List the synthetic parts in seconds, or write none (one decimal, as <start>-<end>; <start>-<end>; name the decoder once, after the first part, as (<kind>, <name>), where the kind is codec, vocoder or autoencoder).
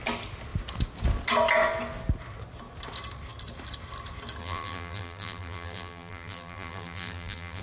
4.4-7.6 (vocoder, BigVGAN v2)